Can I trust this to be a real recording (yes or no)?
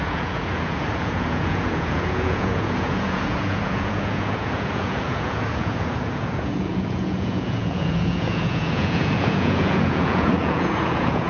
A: no